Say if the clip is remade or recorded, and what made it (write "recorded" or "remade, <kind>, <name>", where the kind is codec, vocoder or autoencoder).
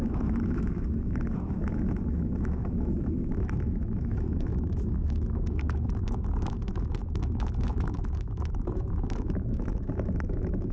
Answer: remade, autoencoder, DAC-VAE